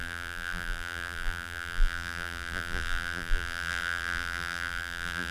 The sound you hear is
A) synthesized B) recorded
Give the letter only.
A